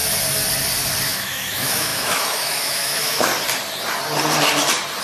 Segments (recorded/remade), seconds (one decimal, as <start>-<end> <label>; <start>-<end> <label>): 0.0-1.1 recorded; 1.1-3.3 remade; 3.3-5.0 recorded